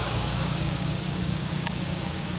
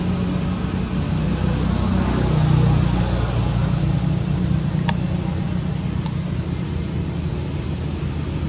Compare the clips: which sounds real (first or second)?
second